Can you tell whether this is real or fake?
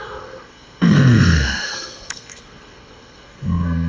fake